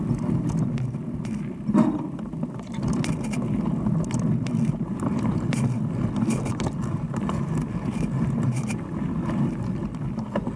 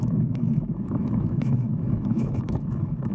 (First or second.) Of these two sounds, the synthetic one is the second